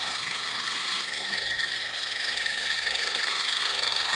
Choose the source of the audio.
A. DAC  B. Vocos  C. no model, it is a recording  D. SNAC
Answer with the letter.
D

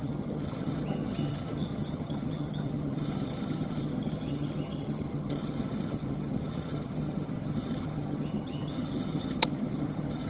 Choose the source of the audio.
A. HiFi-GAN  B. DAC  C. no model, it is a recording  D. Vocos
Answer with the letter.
A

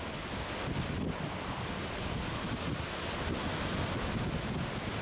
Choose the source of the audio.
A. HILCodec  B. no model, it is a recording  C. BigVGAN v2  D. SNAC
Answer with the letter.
B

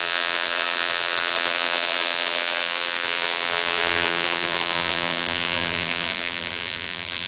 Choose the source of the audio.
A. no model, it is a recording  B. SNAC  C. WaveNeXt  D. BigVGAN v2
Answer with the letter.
D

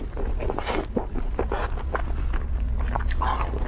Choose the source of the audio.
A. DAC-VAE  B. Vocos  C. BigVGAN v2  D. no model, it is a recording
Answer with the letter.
D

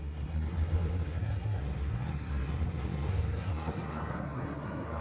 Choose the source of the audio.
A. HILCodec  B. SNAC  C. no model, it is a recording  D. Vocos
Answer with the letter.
B